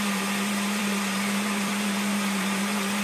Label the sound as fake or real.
fake